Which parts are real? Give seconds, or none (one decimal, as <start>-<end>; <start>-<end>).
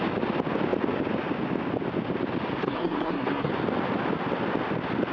0.0-2.6; 3.5-5.1